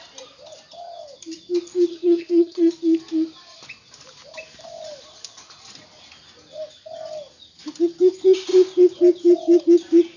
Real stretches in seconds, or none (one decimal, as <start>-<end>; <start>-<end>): 0.0-1.9; 2.7-10.2